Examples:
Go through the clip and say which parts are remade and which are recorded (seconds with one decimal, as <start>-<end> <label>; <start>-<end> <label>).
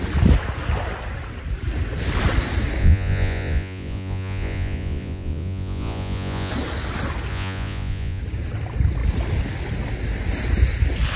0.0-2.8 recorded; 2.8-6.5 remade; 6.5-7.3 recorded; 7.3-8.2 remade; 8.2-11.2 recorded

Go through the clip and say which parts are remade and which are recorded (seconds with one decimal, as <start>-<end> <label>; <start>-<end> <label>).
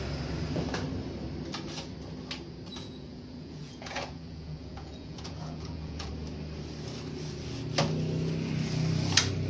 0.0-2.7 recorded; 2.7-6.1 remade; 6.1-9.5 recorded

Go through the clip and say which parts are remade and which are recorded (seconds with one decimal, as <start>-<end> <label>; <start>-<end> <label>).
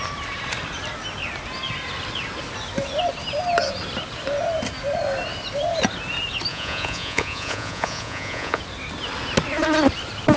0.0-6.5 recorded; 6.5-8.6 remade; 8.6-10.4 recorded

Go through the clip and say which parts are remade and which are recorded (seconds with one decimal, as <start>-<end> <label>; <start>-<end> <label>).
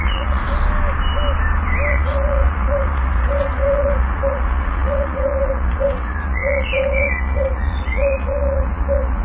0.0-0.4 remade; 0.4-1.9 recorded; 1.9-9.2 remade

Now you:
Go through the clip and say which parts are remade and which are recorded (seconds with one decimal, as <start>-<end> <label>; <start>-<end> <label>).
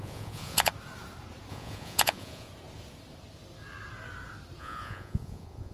0.0-0.7 remade; 0.7-1.5 recorded; 1.5-2.5 remade; 2.5-4.6 recorded; 4.6-5.7 remade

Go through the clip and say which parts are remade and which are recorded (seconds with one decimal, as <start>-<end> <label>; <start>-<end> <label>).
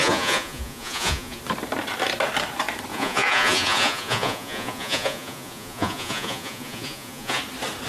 0.0-1.4 remade; 1.4-2.9 recorded; 2.9-7.4 remade; 7.4-7.9 recorded